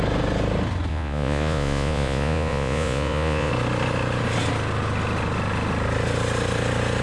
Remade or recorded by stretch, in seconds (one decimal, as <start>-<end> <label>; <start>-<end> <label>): 0.0-0.9 recorded; 0.9-3.5 remade; 3.5-7.0 recorded